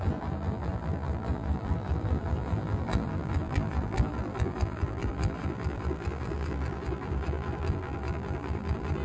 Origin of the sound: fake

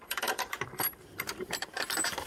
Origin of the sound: fake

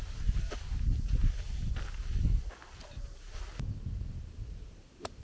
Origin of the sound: real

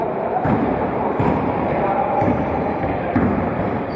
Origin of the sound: fake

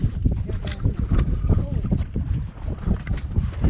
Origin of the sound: real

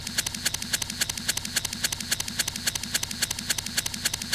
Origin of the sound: real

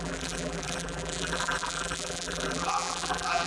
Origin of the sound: fake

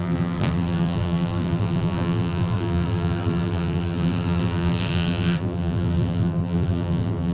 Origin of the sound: fake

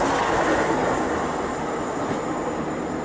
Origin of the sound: real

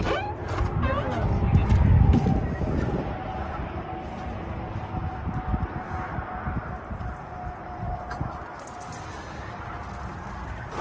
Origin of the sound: real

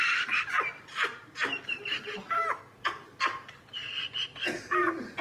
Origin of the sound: real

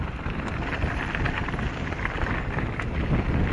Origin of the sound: real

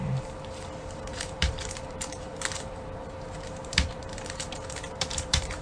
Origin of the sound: fake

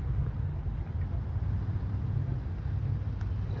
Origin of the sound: real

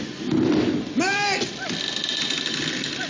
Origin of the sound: real